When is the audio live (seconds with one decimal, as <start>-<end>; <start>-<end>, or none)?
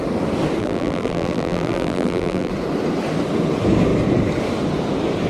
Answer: 0.0-0.6; 2.5-5.3